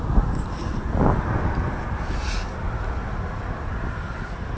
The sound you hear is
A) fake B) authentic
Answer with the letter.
B